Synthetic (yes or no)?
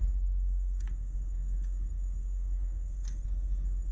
yes